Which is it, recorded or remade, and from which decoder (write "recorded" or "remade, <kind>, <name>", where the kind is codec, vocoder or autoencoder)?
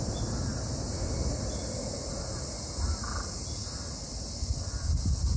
recorded